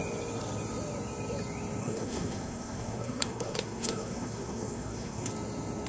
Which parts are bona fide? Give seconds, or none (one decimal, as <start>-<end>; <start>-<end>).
0.0-1.8; 5.3-5.9